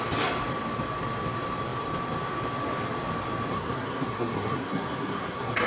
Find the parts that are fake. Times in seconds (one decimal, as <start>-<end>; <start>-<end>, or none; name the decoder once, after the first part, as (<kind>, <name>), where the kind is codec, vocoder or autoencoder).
3.5-5.7 (codec, SNAC)